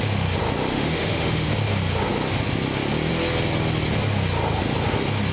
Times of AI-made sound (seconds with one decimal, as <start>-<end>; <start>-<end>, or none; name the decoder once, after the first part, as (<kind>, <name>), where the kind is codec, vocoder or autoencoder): 0.7-1.5 (autoencoder, DAC-VAE)